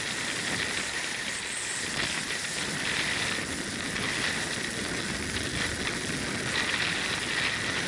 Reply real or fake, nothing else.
real